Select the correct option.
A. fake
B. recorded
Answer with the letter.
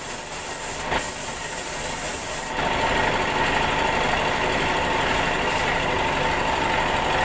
B